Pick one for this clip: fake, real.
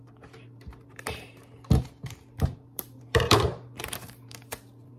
fake